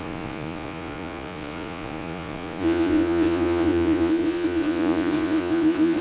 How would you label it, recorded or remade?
remade